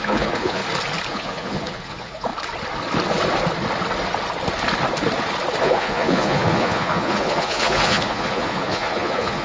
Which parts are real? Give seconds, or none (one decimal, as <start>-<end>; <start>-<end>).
0.6-1.1; 2.3-5.6